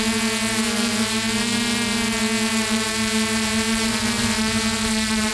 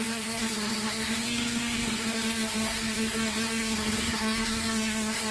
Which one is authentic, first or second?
first